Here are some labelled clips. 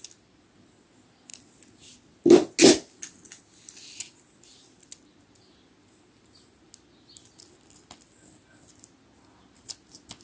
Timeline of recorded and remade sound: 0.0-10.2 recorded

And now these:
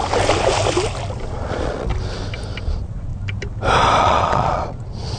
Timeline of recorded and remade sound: 0.0-1.3 recorded; 1.3-1.9 remade; 1.9-2.6 recorded; 2.6-3.1 remade; 3.1-4.0 recorded; 4.0-5.2 remade